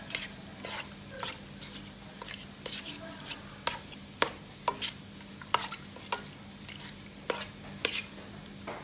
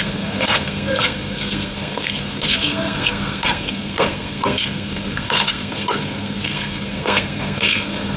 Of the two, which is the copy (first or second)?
second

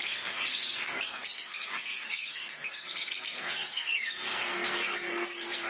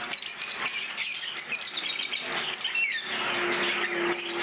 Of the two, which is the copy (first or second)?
first